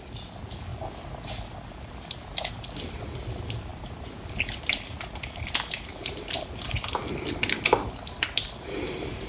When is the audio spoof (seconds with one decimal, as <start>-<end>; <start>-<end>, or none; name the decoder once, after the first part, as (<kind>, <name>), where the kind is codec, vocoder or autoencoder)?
none